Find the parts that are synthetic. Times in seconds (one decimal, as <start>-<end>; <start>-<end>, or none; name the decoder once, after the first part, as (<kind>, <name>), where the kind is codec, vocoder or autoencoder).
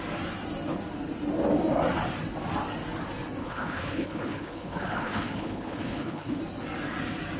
3.4-6.4 (codec, HILCodec)